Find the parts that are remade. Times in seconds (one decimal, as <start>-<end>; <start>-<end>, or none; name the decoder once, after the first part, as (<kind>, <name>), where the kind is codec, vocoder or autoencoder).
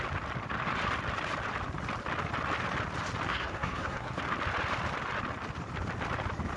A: 3.3-4.2 (codec, SNAC)